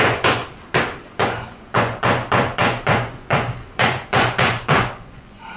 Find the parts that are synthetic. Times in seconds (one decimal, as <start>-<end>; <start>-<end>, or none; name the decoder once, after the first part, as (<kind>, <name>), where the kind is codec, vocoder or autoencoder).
0.0-0.4 (vocoder, Vocos); 1.0-5.6